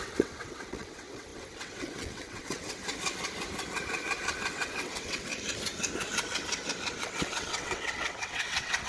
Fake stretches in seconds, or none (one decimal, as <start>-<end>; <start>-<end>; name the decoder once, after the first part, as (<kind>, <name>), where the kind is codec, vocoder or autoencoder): 0.0-2.8 (vocoder, WaveNeXt); 4.5-5.3; 7.0-8.9